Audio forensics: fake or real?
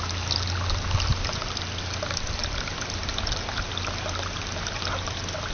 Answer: real